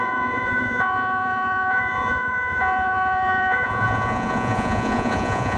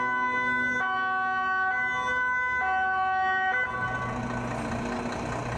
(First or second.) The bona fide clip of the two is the second